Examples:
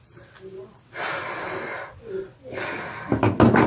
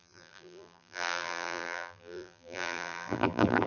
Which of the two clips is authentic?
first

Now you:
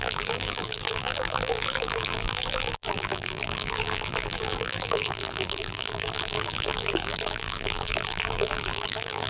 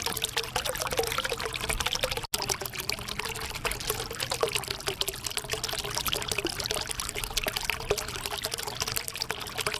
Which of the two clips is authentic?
second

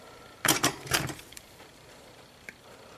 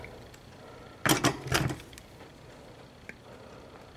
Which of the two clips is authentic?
second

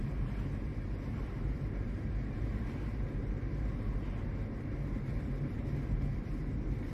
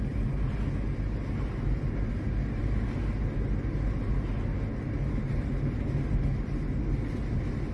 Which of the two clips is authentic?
second